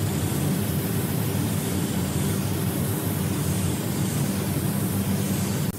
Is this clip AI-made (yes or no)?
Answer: no